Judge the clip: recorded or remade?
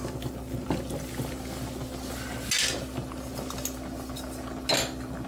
recorded